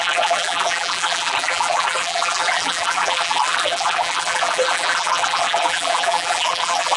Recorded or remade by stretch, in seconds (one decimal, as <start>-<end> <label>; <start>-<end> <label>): 0.0-7.0 remade